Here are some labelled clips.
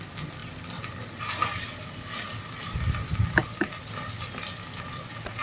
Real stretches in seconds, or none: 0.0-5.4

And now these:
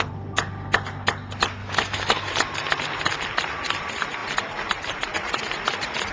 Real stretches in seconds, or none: 0.0-1.6; 2.3-6.1

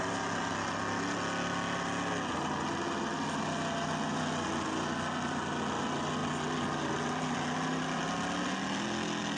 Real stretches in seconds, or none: 0.0-9.4

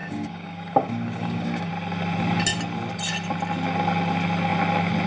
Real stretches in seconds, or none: 1.7-5.1

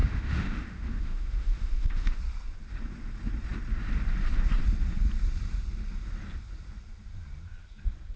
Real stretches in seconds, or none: 2.2-8.2

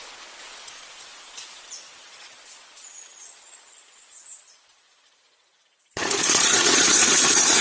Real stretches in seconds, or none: none